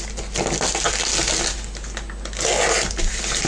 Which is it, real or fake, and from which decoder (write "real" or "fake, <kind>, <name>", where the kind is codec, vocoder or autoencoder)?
real